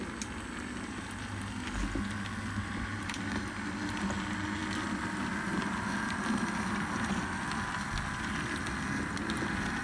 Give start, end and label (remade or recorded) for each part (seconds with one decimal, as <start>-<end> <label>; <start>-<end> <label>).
0.0-9.8 recorded